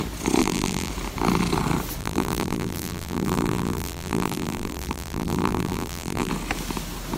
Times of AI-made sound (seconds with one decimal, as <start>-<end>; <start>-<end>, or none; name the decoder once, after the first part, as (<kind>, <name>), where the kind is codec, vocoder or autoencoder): 0.4-0.9 (vocoder, BigVGAN v2); 2.0-6.3

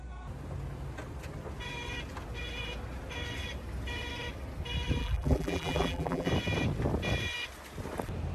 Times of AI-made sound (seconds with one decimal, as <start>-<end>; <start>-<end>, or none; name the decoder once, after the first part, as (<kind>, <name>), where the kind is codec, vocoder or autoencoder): 5.0-6.3 (vocoder, BigVGAN v2)

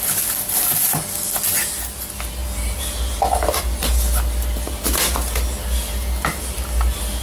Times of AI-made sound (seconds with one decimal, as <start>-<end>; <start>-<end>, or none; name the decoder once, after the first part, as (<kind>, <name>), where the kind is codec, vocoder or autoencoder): none

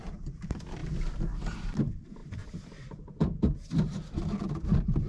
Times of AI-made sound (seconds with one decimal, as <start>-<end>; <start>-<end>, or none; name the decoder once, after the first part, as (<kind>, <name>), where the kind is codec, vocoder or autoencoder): 0.0-5.1 (vocoder, BigVGAN v2)

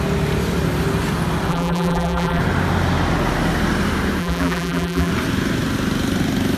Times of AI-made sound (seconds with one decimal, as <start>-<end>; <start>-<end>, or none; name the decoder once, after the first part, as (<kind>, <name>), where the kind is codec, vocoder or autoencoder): 1.5-2.4 (vocoder, BigVGAN v2); 4.2-5.1

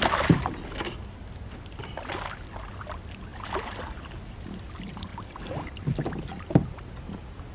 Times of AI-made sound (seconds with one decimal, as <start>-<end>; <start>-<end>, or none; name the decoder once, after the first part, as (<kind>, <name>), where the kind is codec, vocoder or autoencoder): none

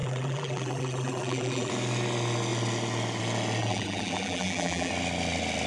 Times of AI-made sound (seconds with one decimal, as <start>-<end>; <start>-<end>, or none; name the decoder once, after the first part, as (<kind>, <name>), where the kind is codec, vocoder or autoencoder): 0.0-1.7 (vocoder, BigVGAN v2); 3.6-4.9